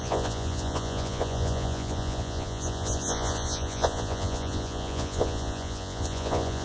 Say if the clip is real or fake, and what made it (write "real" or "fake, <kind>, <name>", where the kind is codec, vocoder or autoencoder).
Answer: fake, vocoder, Vocos